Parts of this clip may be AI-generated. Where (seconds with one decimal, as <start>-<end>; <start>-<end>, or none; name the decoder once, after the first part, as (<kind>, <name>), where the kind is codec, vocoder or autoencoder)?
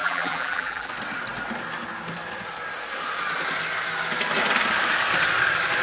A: 0.0-0.9 (vocoder, BigVGAN v2)